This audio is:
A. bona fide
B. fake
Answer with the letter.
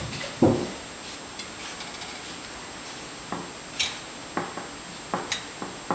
A